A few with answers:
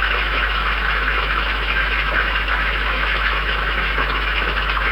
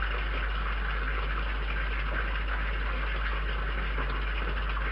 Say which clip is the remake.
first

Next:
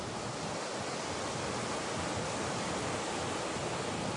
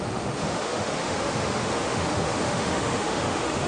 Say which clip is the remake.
second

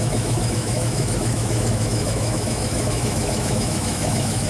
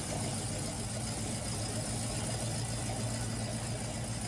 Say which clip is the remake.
first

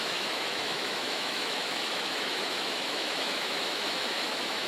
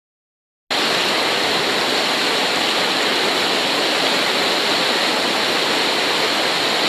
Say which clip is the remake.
first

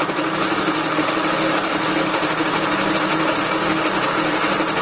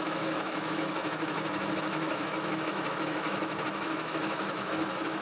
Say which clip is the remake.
second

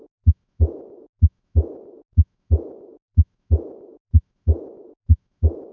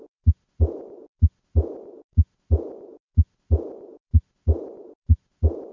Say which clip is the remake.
first